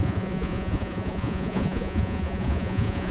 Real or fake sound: fake